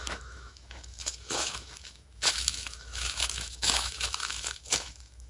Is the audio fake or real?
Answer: fake